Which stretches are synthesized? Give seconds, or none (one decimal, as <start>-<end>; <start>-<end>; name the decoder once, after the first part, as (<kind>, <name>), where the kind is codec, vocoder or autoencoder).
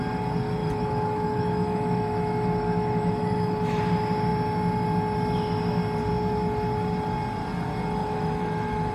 0.6-3.8 (autoencoder, DAC-VAE); 8.0-8.9